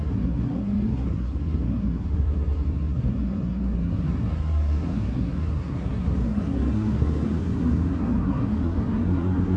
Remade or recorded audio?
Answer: remade